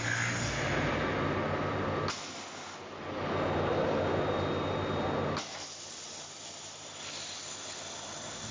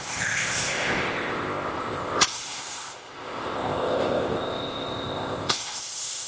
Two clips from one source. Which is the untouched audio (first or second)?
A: first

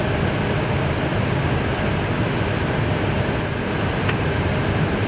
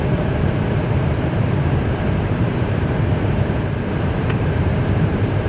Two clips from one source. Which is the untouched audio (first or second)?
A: first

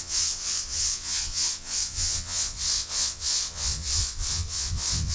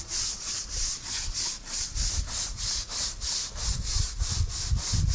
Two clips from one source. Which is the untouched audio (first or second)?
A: second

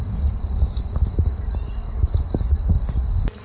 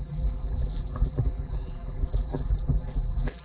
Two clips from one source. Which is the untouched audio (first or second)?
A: first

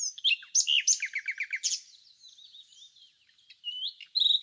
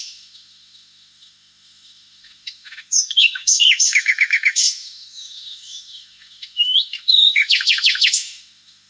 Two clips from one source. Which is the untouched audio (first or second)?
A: first